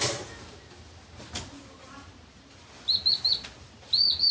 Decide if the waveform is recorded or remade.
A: recorded